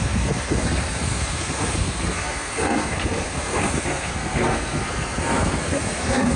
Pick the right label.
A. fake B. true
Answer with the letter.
A